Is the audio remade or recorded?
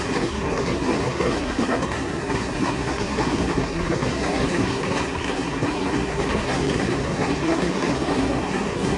remade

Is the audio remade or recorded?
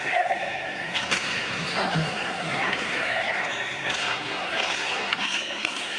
remade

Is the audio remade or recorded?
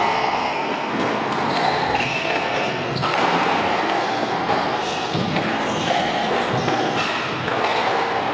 remade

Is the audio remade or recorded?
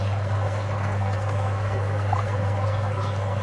remade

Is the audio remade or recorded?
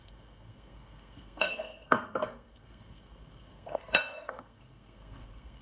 remade